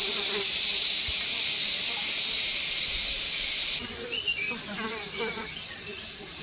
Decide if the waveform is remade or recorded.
recorded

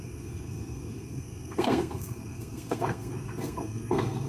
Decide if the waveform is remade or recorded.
remade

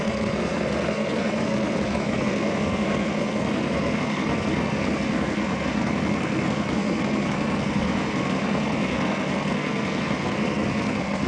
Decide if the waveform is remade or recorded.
remade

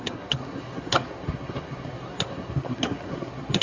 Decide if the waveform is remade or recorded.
remade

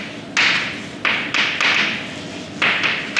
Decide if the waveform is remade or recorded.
recorded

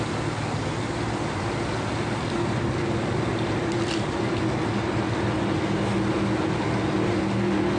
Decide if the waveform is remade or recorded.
recorded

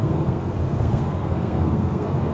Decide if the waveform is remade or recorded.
remade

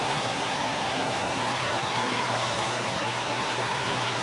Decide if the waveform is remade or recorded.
remade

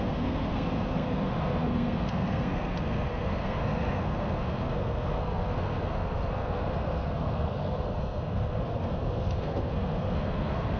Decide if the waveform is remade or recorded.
remade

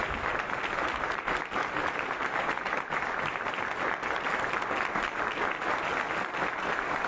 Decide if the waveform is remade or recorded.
recorded